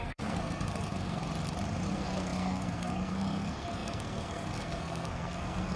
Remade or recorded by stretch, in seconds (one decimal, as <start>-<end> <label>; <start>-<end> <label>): 0.0-1.2 remade; 1.2-1.9 recorded; 1.9-5.8 remade